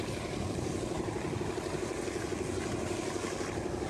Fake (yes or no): yes